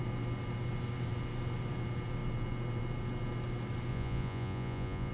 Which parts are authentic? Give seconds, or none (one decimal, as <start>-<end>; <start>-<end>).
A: 0.0-3.9